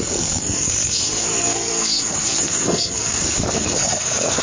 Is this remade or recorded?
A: remade